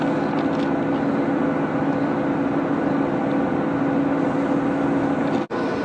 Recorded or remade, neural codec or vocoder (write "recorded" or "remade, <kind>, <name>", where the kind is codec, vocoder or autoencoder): recorded